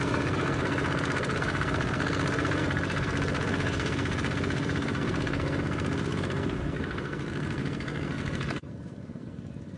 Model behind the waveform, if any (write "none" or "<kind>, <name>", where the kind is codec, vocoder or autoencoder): codec, SNAC